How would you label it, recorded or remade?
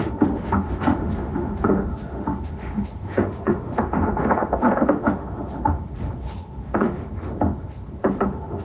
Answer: remade